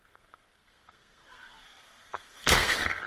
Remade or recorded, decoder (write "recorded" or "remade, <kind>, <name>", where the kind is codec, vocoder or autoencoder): remade, codec, SNAC